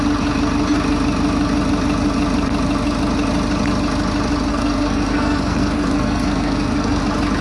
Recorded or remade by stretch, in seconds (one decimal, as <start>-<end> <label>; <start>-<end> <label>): 0.0-4.5 recorded; 4.5-7.0 remade; 7.0-7.4 recorded